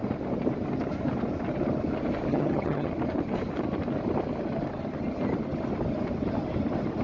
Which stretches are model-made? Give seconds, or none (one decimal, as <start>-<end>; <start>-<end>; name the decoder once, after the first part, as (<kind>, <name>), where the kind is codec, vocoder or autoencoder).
2.3-2.9 (vocoder, HiFi-GAN)